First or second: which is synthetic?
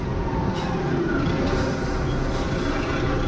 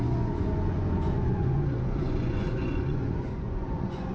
second